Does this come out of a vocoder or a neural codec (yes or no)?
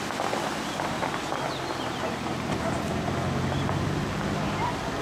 no